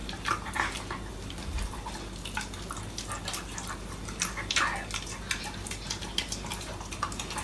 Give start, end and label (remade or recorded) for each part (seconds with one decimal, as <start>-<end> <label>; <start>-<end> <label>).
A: 0.0-1.9 remade; 1.9-7.4 recorded